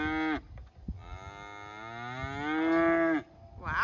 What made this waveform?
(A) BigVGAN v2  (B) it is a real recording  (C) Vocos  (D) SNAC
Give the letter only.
B